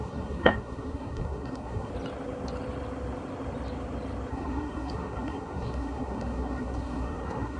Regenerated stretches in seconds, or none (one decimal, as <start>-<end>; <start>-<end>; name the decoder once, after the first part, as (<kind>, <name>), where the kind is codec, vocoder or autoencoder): 0.0-1.9 (codec, SNAC); 4.3-7.6